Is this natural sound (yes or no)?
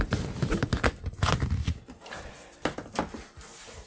yes